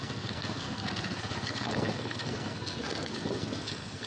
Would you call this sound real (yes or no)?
no